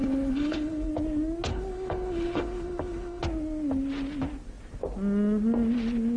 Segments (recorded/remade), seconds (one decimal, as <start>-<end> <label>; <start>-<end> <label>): 0.0-0.9 remade; 0.9-1.5 recorded; 1.5-3.2 remade; 3.2-6.2 recorded